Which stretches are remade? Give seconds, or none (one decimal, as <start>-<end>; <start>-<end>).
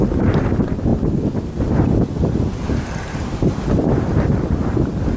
0.0-5.2